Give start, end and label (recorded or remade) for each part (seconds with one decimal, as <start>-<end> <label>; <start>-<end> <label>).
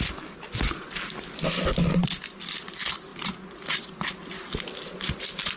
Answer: 0.0-5.6 recorded